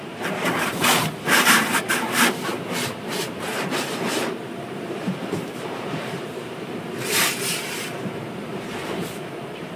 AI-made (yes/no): yes